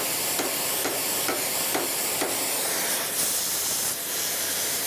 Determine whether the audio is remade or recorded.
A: remade